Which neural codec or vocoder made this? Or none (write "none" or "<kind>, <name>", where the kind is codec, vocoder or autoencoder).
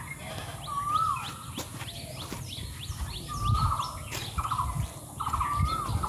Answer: none